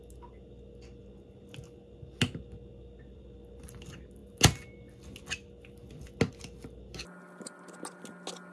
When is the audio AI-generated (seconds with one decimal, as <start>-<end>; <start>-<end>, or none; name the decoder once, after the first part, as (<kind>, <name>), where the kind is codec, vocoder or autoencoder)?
none